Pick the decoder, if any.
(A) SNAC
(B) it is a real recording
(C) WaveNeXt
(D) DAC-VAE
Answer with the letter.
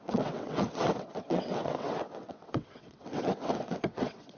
C